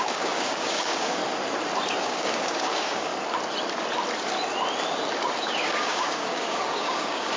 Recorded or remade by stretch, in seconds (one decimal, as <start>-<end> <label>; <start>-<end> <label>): 0.0-1.2 remade; 1.2-2.0 recorded; 2.0-3.1 remade; 3.1-5.4 recorded; 5.4-7.4 remade